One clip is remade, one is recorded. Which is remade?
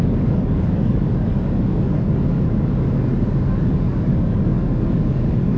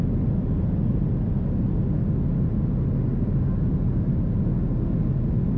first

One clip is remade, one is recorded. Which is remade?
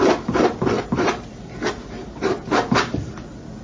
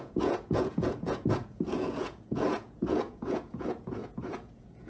second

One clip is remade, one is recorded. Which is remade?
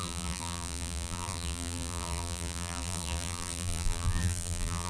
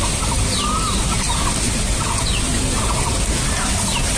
first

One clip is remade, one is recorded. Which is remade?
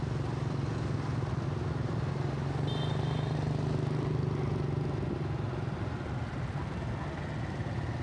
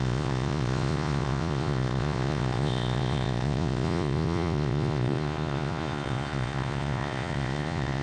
second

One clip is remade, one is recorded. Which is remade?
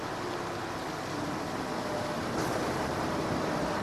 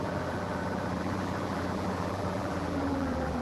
second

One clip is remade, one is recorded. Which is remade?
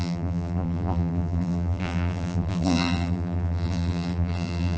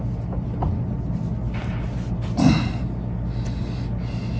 first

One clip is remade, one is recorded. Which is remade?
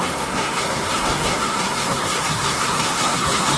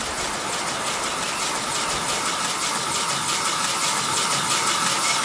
first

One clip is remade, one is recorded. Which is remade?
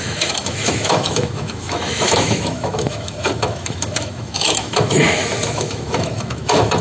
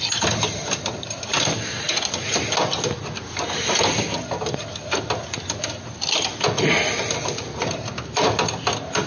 first